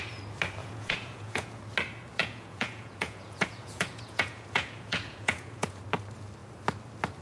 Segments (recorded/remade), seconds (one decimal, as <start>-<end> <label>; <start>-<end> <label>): 0.0-0.6 recorded; 0.6-1.6 remade; 1.6-2.2 recorded; 2.2-5.8 remade; 5.8-7.2 recorded